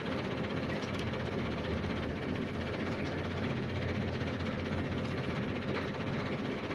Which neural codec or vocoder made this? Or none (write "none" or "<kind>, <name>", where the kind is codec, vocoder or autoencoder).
none